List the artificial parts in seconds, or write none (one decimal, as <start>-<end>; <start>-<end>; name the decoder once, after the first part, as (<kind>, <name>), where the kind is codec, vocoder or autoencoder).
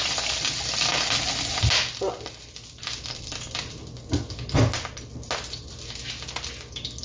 none